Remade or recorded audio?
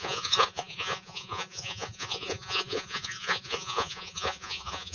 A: remade